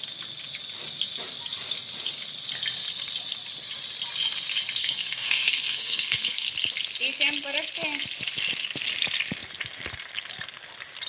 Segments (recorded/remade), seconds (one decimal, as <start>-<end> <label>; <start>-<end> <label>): 0.0-4.8 recorded; 4.8-6.5 remade; 6.5-11.1 recorded